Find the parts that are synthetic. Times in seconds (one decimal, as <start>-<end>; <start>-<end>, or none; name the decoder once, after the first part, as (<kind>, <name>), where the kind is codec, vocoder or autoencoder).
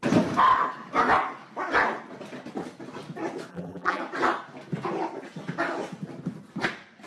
3.5-4.0 (vocoder, BigVGAN v2)